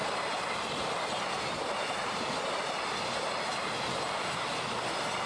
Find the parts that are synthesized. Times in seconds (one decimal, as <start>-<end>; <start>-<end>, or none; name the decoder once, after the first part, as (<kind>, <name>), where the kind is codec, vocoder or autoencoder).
none